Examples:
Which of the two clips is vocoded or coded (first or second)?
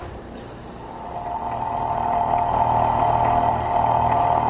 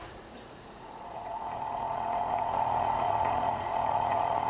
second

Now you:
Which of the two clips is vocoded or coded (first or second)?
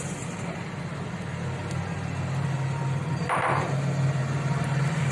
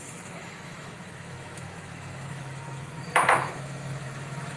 second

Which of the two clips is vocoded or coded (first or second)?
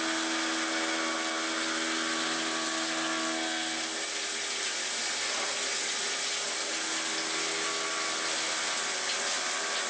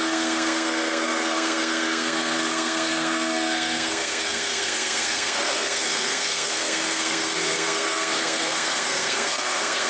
second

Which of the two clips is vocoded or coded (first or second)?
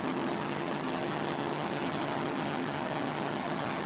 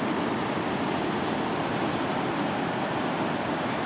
first